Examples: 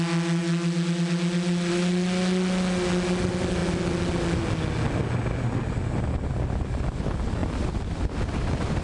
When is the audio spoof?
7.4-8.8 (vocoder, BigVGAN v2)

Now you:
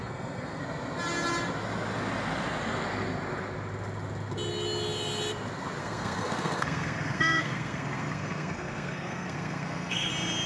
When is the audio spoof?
0.0-0.6 (codec, SNAC); 5.8-10.1